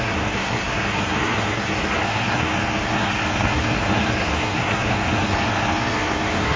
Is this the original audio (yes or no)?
no